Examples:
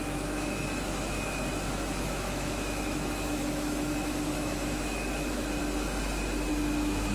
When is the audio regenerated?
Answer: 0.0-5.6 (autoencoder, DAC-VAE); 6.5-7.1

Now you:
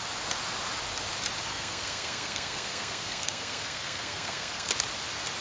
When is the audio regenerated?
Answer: 1.5-4.7 (codec, SNAC)

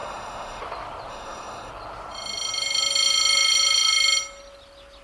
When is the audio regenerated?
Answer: 0.0-0.6 (autoencoder, DAC-VAE); 1.1-1.7